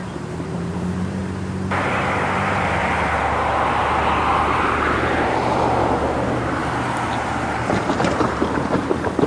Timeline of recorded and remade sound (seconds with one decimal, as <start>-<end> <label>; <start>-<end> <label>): 0.0-1.2 remade; 1.2-1.9 recorded; 1.9-2.8 remade; 2.8-4.6 recorded; 4.6-6.6 remade; 6.6-7.9 recorded; 7.9-9.3 remade